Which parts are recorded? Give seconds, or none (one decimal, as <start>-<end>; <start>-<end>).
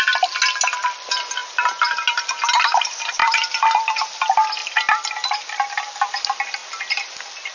0.0-7.5